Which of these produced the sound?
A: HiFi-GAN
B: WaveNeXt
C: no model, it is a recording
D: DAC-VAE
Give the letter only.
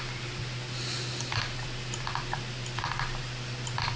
C